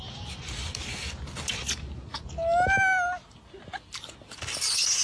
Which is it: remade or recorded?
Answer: recorded